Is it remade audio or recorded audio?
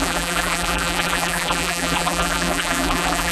remade